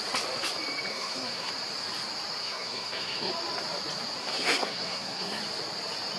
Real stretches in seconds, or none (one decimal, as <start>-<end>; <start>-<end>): 0.0-0.9; 1.5-2.4; 3.3-4.2; 5.4-6.2